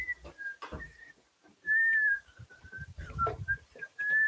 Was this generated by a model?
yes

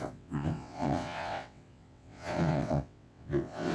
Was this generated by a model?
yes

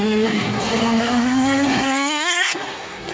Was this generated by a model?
yes